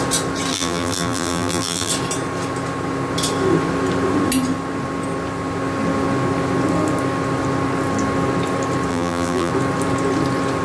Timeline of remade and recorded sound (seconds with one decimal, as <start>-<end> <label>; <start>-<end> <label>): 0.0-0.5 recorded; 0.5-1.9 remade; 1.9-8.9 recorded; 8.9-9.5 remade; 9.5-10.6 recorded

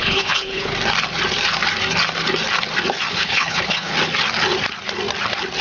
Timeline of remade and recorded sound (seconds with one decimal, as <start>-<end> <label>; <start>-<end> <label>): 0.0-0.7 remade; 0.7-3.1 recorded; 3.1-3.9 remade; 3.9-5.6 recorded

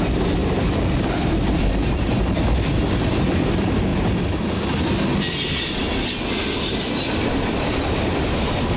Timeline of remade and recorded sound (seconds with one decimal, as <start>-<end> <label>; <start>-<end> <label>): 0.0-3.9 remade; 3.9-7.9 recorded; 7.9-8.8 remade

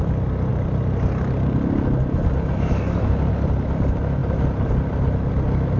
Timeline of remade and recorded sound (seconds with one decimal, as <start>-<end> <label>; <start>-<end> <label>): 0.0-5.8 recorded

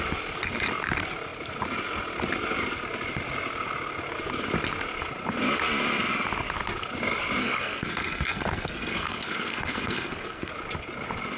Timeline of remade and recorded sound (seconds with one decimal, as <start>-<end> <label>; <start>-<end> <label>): 0.0-7.4 recorded; 7.4-10.5 remade; 10.5-11.4 recorded

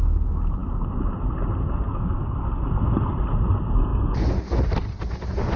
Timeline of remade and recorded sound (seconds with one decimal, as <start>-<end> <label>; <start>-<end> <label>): 0.0-5.6 recorded

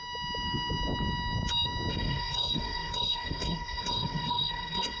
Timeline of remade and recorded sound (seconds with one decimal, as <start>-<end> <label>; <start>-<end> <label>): 0.0-1.9 recorded; 1.9-5.0 remade

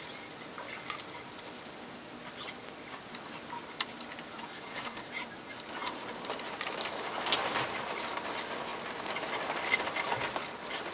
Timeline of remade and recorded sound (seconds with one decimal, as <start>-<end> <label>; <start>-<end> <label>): 0.0-4.5 recorded; 4.5-5.1 remade; 5.1-10.9 recorded